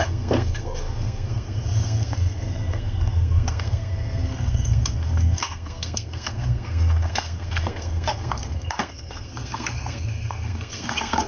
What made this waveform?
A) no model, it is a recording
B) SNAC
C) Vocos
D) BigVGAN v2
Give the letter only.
B